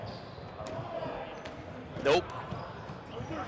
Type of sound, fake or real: real